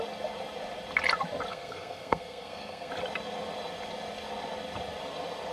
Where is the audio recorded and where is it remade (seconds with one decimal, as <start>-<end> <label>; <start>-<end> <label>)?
0.0-1.5 recorded; 1.5-2.9 remade; 2.9-5.5 recorded